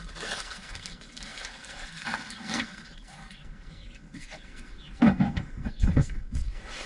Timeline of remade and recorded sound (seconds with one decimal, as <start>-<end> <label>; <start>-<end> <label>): 0.0-6.9 remade